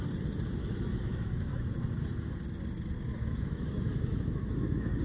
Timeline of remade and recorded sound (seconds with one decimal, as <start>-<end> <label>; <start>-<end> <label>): 0.0-0.6 recorded; 0.6-1.6 remade; 1.6-3.1 recorded; 3.1-5.0 remade